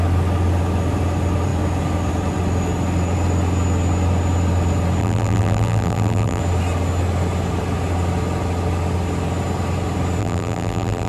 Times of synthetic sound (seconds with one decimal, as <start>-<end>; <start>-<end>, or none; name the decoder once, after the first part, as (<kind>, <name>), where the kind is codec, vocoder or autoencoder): 5.0-6.4 (vocoder, BigVGAN v2); 10.2-11.1